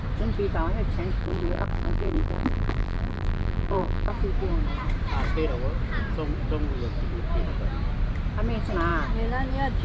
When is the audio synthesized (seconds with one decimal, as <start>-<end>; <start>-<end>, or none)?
1.2-4.1